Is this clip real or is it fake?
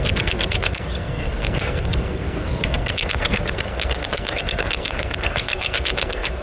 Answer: fake